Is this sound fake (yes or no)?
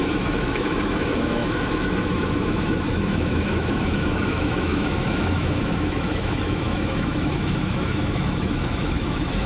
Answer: yes